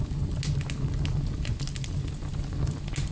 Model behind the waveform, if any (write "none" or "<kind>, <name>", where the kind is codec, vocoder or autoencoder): none